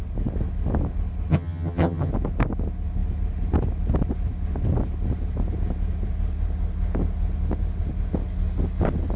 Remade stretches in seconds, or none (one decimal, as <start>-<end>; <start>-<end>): 1.3-2.1